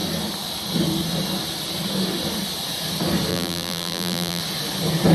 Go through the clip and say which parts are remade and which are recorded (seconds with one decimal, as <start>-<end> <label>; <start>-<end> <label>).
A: 0.0-3.3 recorded; 3.3-4.4 remade; 4.4-5.1 recorded

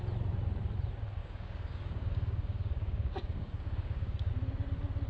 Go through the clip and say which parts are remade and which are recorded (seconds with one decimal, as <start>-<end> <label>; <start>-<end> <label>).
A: 0.0-1.2 recorded; 1.2-4.3 remade; 4.3-5.1 recorded